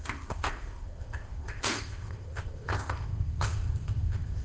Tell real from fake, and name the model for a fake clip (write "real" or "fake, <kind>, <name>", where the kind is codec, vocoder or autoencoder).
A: fake, codec, ZipCodec